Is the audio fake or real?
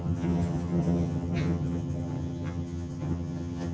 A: fake